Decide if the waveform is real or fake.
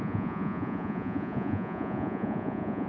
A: fake